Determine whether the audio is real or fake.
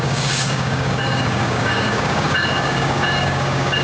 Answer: fake